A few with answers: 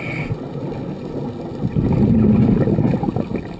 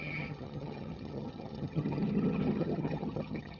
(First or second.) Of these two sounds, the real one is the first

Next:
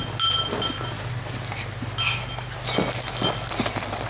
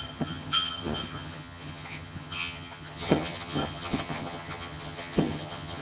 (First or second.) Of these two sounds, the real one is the first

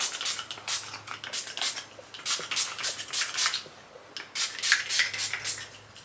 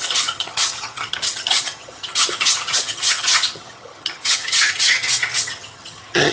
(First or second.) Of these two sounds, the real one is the first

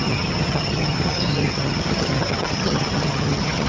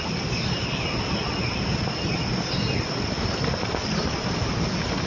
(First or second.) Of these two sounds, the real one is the second